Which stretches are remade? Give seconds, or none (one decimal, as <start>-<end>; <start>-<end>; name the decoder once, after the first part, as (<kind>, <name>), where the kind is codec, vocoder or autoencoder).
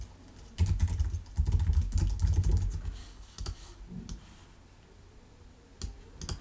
3.0-3.8 (codec, DAC)